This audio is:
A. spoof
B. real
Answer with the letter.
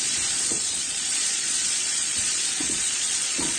A